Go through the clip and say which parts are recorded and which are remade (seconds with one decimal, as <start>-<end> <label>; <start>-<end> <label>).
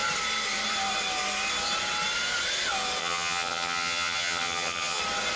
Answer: 0.0-3.0 recorded; 3.0-5.0 remade; 5.0-5.4 recorded